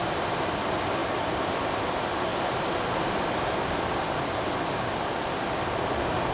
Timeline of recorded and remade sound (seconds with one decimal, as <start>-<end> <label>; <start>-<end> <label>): 0.0-6.3 recorded